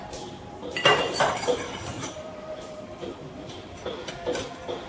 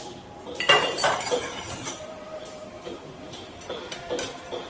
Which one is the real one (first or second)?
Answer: second